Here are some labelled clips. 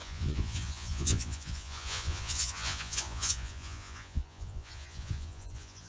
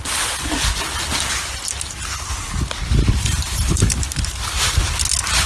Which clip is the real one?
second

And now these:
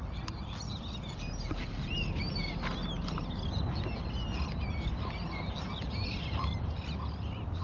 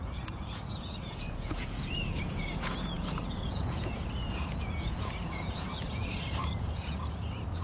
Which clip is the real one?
first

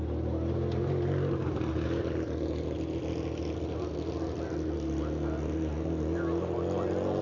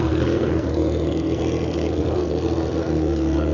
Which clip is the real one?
first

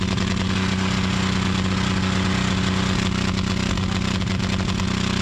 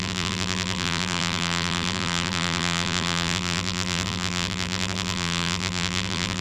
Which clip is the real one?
first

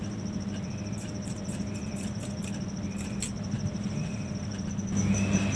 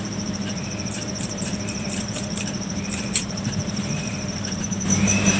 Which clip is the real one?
first